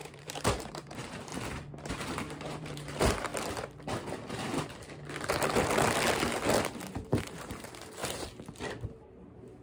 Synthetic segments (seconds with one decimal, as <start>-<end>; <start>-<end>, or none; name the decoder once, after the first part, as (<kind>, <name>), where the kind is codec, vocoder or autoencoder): 0.0-1.3 (vocoder, BigVGAN v2); 1.9-3.3; 6.7-8.0; 8.9-9.6